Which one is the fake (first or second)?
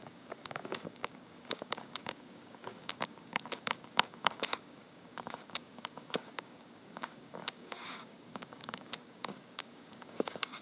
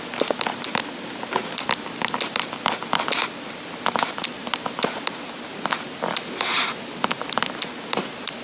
first